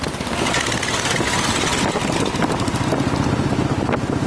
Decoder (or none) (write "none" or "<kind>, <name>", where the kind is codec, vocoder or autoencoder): none